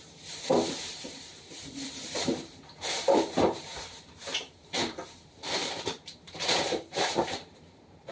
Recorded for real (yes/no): no